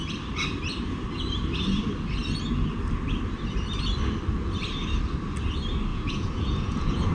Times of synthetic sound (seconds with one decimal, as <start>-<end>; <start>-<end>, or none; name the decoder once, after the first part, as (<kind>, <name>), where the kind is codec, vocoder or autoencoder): 5.9-7.1 (vocoder, Vocos)